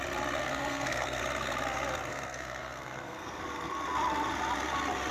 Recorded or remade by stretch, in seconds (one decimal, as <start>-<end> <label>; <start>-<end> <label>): 0.0-0.4 recorded; 0.4-1.2 remade; 1.2-2.1 recorded; 2.1-3.4 remade; 3.4-5.1 recorded